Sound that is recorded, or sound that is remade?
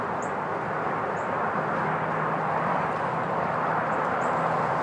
recorded